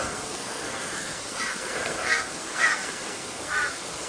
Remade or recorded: remade